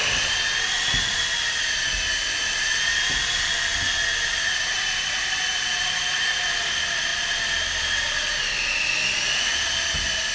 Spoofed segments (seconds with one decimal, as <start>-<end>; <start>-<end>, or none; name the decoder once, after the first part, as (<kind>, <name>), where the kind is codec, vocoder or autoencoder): none